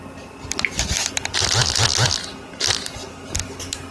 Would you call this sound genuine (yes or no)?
yes